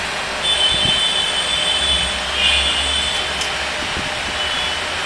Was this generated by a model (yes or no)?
no